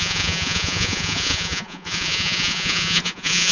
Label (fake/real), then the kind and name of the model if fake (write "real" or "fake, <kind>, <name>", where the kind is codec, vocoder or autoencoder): fake, vocoder, Vocos